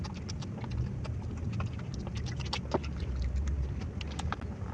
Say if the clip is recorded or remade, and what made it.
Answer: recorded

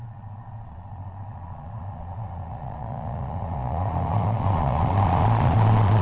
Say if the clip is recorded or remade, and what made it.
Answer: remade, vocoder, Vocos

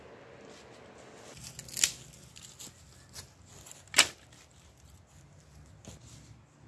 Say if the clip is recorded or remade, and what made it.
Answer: recorded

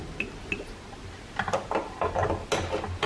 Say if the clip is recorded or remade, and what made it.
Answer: recorded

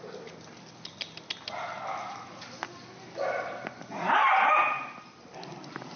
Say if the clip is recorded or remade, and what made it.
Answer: recorded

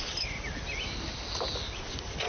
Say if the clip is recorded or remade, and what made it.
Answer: recorded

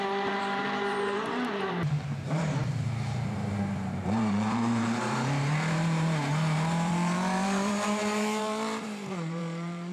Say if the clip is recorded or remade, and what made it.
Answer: remade, vocoder, BigVGAN v2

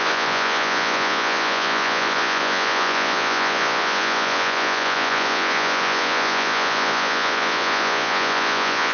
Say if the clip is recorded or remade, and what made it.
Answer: remade, vocoder, Vocos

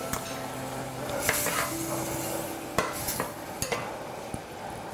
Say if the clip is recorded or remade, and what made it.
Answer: recorded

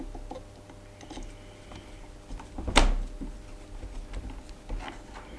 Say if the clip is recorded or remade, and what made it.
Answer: recorded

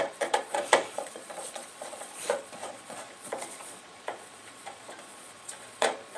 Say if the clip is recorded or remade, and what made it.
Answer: remade, vocoder, Vocos